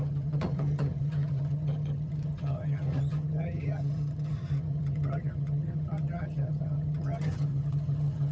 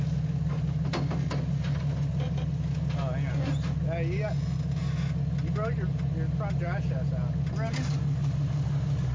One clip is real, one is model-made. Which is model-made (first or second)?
first